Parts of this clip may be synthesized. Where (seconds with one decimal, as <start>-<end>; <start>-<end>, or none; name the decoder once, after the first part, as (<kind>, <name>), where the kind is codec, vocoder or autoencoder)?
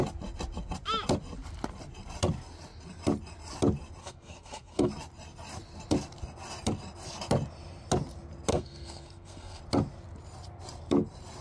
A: 4.0-4.9 (codec, SNAC); 8.5-9.6